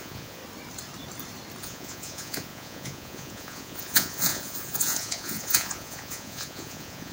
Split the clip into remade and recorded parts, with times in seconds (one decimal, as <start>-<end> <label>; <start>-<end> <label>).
0.0-0.4 remade; 0.4-1.6 recorded; 1.6-7.1 remade